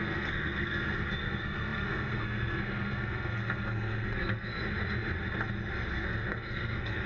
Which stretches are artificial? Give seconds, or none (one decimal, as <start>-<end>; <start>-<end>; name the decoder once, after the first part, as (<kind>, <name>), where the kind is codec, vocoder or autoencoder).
0.0-4.6 (codec, SNAC); 5.9-7.1